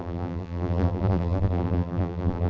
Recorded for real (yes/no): no